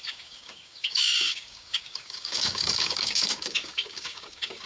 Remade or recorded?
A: remade